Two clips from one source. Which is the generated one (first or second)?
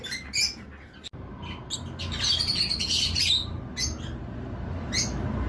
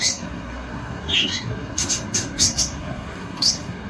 second